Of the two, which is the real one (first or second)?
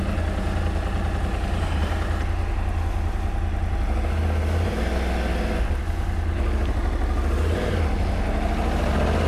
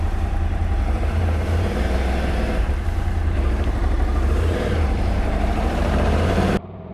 first